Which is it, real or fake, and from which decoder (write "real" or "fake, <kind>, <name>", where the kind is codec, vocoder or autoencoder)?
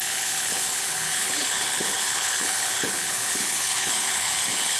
fake, codec, HILCodec